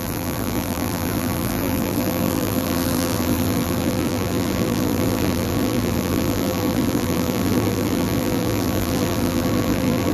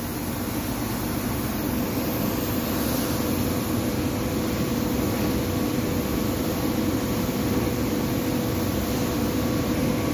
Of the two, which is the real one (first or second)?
second